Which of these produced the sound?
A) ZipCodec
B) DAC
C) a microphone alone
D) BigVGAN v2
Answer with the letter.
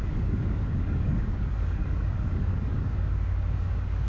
B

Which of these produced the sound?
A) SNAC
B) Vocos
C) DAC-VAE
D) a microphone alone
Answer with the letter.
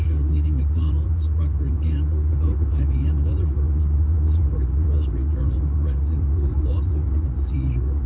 B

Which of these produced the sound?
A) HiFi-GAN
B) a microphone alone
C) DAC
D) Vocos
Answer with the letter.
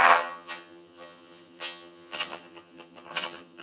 A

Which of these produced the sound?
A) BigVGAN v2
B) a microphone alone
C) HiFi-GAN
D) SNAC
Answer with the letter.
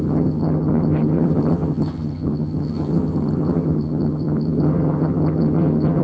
C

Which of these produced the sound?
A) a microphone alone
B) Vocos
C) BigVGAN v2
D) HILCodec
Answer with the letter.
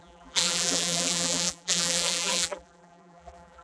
C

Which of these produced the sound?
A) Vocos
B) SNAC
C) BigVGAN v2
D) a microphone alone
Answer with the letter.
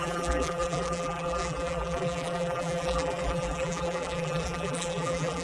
C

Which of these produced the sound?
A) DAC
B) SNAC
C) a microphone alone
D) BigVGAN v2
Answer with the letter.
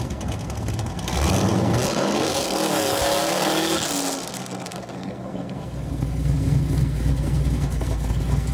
B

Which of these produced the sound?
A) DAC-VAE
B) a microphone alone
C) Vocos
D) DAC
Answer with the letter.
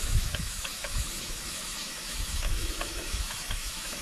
A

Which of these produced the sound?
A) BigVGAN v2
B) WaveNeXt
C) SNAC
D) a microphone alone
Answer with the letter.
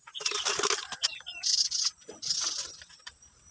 D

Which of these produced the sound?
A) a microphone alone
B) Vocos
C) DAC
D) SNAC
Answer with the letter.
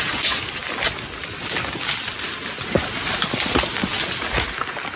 A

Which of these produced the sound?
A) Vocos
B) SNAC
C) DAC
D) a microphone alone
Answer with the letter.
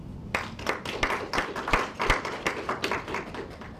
D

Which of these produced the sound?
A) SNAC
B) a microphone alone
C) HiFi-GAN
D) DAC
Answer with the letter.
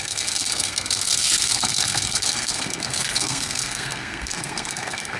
A